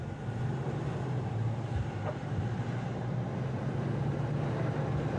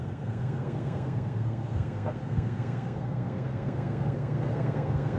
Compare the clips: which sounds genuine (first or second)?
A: first